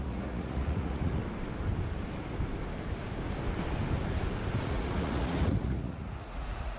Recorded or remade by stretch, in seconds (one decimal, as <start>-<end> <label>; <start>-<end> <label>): 0.0-1.2 remade; 1.2-4.5 recorded; 4.5-6.8 remade